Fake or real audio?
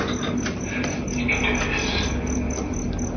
real